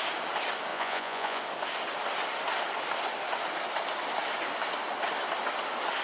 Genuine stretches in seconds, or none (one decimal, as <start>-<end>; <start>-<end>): 0.0-0.7; 1.4-6.0